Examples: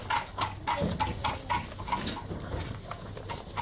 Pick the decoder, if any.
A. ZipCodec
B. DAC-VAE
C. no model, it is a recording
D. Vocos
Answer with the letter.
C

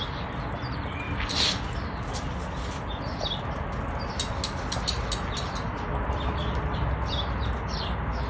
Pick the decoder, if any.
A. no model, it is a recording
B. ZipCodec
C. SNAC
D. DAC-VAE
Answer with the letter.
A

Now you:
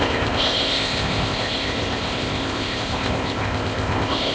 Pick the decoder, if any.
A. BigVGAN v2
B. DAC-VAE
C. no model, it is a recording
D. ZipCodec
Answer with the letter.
D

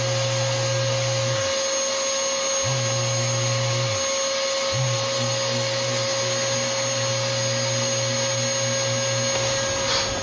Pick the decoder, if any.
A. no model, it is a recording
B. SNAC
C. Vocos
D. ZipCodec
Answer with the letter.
A